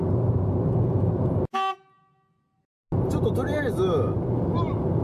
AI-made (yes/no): no